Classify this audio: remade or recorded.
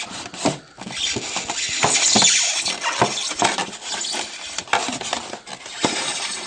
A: recorded